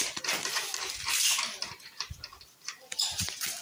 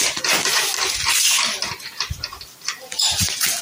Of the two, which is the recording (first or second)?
second